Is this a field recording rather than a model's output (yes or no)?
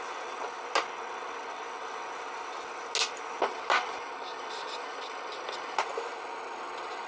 yes